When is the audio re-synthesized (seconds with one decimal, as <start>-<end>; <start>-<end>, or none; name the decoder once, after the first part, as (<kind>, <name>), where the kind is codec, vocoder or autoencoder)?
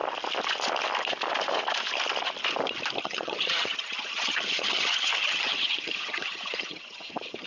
3.0-7.5 (vocoder, HiFi-GAN)